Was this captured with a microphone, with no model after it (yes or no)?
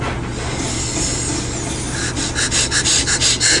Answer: yes